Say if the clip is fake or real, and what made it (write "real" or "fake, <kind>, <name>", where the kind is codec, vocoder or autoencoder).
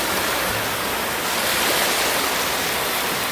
real